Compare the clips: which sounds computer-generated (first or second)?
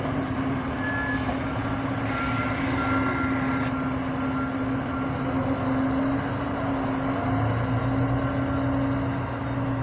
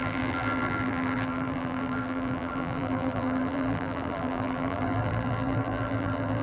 second